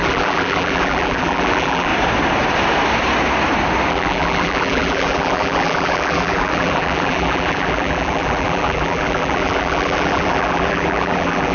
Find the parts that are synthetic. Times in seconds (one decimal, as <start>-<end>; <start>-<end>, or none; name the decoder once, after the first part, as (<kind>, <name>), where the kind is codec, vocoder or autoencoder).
0.0-1.9 (vocoder, BigVGAN v2); 3.9-11.5